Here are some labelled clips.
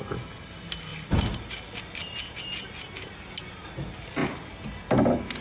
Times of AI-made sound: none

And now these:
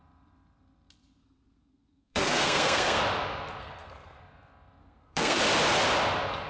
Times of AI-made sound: 1.2-3.0 (codec, SNAC); 3.6-4.2; 4.8-5.4

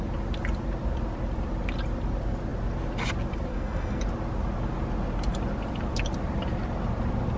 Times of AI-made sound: 3.5-4.0 (codec, SNAC)

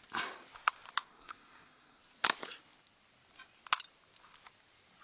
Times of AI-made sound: 1.1-2.0 (codec, SNAC)